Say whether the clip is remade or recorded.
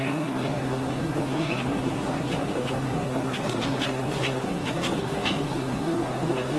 remade